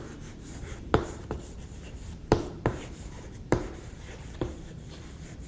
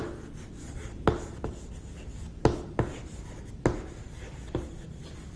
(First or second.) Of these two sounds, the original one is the second